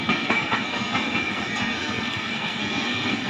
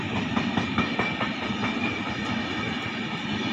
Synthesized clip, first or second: first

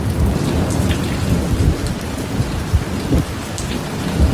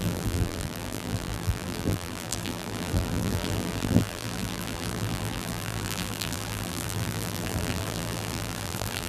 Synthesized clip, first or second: second